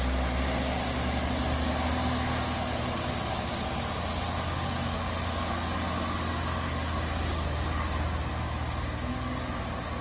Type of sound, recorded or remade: recorded